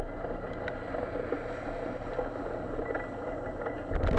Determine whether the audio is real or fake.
real